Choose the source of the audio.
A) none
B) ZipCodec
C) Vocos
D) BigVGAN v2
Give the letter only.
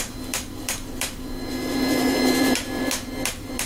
D